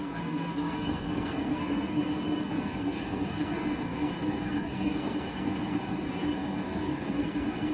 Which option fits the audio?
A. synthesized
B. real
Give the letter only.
A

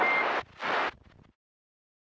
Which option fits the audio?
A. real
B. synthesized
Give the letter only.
A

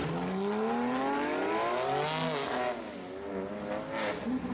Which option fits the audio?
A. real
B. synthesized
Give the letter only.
A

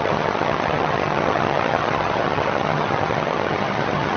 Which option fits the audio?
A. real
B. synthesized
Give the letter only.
B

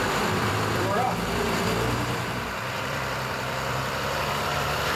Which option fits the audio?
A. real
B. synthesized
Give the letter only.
B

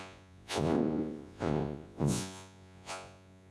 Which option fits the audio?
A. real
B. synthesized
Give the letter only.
B